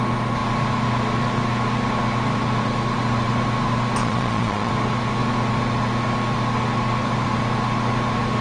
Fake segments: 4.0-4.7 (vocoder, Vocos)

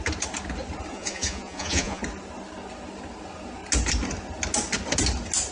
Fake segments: 0.9-2.0 (vocoder, Vocos)

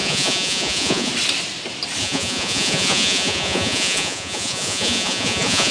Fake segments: 0.0-1.1 (vocoder, Vocos); 2.0-5.7